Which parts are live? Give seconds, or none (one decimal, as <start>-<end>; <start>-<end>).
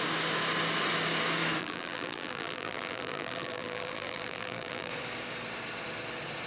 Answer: 0.0-1.6; 4.9-6.5